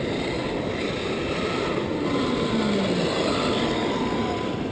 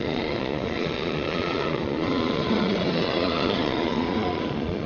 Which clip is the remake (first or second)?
second